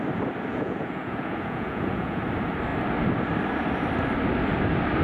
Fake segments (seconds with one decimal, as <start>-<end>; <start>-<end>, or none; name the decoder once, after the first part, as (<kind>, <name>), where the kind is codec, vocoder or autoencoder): 0.5-2.2 (vocoder, Vocos)